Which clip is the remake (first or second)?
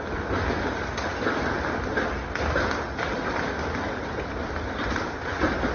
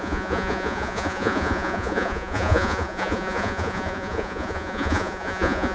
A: second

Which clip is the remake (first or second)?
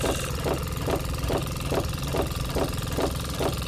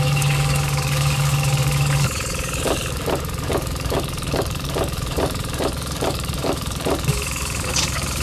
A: second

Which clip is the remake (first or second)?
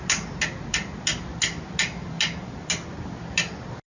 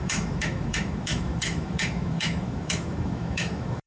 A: second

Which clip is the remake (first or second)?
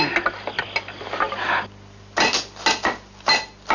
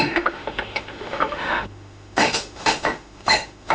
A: second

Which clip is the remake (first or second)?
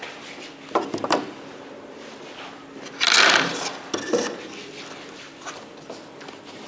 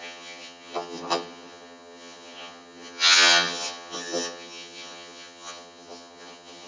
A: second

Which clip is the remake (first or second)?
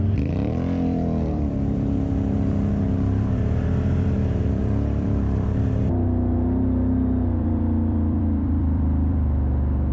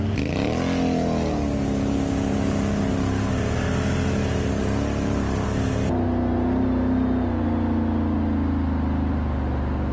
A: first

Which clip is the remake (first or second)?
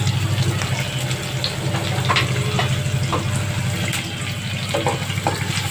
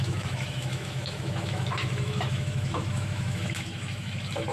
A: second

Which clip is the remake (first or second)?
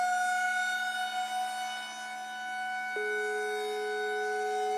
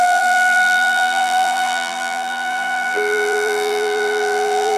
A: second